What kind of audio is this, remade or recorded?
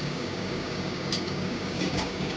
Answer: remade